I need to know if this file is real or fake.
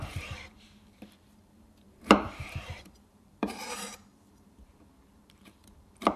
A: fake